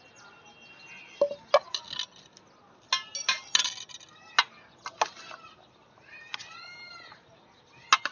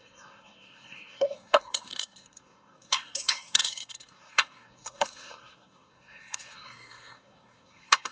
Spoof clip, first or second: second